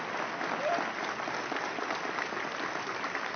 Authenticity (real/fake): real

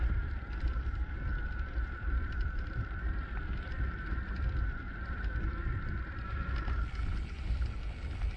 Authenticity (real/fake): fake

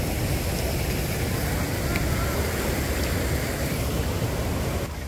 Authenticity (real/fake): real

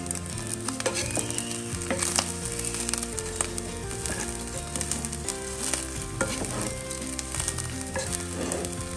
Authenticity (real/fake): real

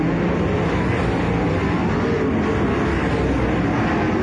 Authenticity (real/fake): real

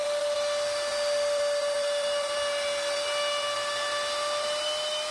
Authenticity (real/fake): real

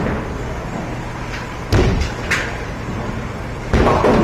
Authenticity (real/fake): real